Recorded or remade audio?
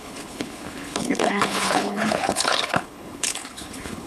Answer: remade